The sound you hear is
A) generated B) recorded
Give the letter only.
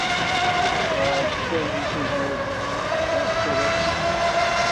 B